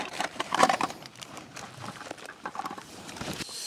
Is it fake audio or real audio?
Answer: fake